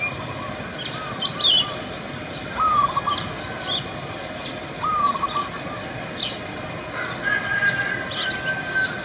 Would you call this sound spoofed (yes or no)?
no